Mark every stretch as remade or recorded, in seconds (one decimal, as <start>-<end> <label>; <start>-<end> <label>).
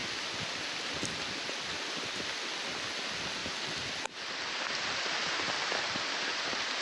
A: 0.0-2.3 remade; 2.3-3.4 recorded; 3.4-4.0 remade; 4.0-6.8 recorded